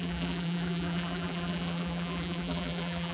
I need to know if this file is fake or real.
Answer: fake